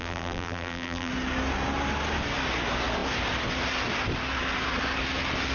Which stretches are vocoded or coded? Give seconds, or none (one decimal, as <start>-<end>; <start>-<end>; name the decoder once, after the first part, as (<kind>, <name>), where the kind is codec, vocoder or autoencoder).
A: 0.0-1.1 (vocoder, BigVGAN v2)